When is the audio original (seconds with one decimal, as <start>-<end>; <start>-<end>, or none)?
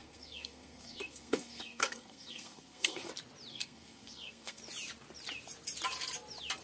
3.1-3.5; 4.6-6.6